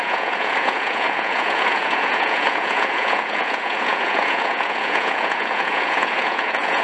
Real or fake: fake